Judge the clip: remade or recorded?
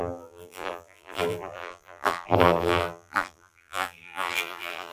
remade